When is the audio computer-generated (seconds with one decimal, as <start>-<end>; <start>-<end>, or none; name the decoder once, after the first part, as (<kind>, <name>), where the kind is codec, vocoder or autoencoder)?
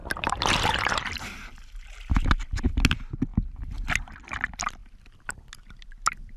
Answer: 0.0-2.1 (vocoder, BigVGAN v2)